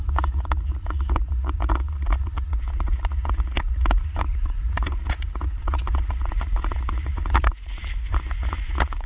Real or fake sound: fake